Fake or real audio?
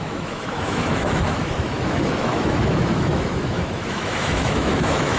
fake